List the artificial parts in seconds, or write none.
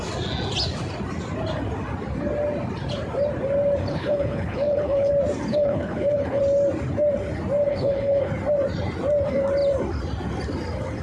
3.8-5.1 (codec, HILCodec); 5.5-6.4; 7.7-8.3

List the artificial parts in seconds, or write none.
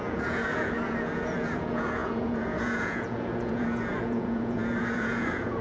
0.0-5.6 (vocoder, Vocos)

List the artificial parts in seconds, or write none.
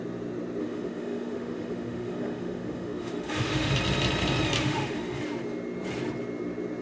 0.6-3.7 (autoencoder, DAC-VAE); 4.6-5.2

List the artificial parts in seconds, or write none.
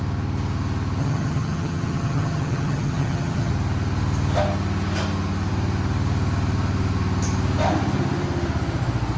1.0-3.5 (vocoder, HiFi-GAN)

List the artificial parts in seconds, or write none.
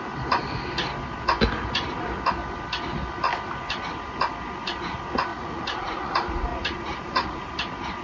5.3-6.1 (vocoder, Vocos); 6.5-7.5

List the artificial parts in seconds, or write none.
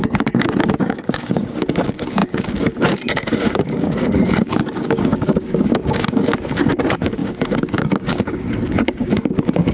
0.0-9.7 (codec, DAC)